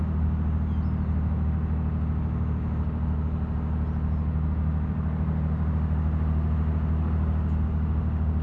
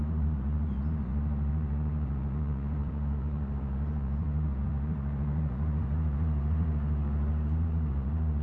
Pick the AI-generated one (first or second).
second